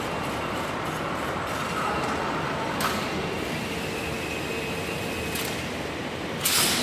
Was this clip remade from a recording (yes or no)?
no